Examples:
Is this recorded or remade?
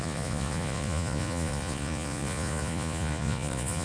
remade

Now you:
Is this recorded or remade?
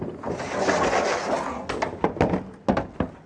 recorded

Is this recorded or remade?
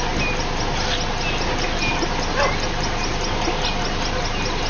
recorded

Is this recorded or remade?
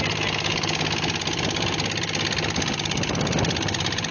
recorded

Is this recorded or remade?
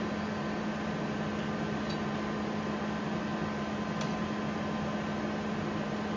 recorded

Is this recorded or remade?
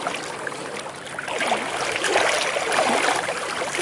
recorded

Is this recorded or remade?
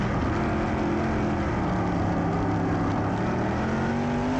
recorded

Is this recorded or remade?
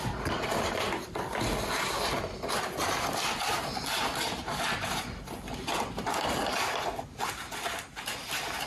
recorded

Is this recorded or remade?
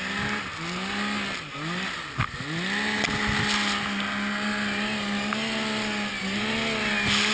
recorded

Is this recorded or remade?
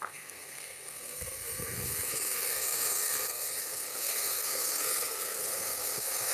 remade